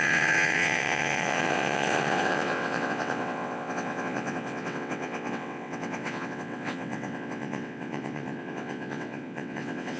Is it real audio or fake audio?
fake